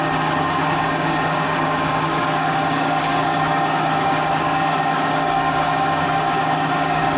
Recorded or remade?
remade